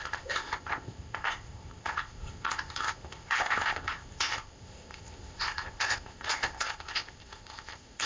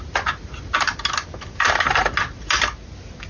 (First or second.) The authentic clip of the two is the second